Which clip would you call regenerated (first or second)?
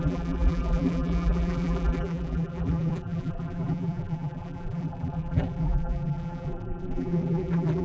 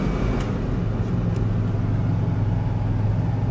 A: first